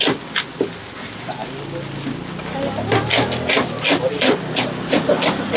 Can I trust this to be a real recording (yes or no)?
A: yes